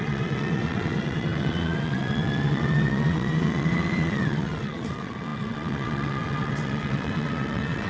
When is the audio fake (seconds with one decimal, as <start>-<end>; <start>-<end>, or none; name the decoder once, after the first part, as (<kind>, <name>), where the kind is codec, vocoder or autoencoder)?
0.0-7.9 (vocoder, WaveNeXt)